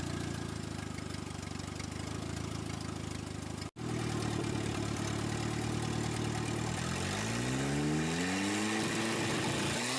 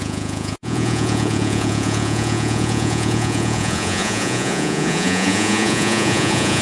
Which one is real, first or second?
first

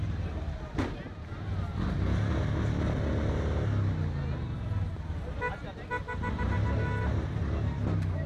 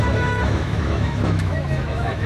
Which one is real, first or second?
first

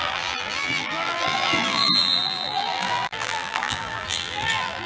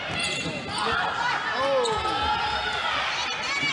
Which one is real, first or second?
second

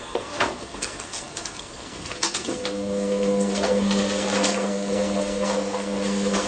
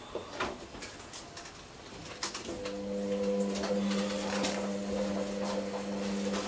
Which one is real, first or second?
second